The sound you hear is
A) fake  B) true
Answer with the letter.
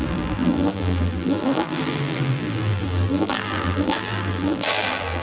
A